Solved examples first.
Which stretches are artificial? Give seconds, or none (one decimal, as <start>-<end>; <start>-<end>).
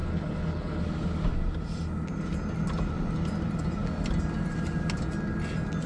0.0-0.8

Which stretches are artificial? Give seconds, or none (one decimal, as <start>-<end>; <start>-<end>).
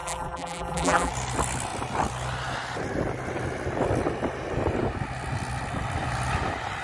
0.0-1.1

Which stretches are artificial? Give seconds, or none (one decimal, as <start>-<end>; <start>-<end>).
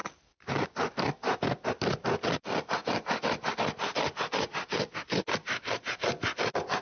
none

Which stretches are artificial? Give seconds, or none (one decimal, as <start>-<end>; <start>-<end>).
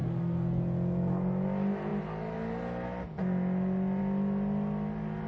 0.0-0.6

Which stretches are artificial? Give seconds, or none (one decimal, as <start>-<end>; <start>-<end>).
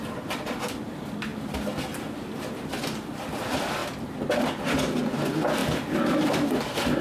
none